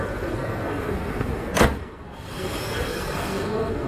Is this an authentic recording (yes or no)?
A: no